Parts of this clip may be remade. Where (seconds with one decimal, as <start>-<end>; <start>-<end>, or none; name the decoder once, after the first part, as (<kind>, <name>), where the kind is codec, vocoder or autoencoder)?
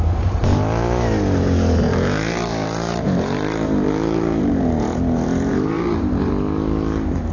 1.9-6.3 (vocoder, BigVGAN v2)